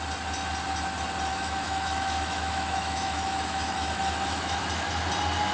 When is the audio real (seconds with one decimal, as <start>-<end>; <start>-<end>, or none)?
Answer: 0.0-1.3; 4.6-5.5